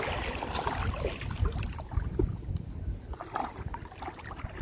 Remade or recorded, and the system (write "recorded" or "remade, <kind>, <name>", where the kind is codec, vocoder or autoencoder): recorded